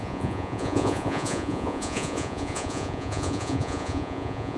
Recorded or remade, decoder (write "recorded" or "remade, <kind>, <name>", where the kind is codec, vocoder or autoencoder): remade, vocoder, Vocos